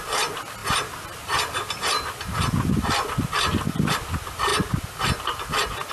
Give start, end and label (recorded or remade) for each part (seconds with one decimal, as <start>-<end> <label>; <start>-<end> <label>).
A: 0.0-5.9 recorded